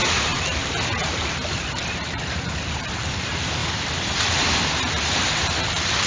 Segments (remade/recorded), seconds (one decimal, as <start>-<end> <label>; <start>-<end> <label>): 0.0-1.0 recorded; 1.0-2.5 remade; 2.5-3.6 recorded; 3.6-4.9 remade; 4.9-6.1 recorded